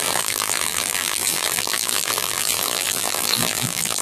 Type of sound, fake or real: fake